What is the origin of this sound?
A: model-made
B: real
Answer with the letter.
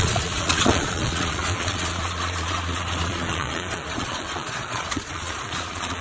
A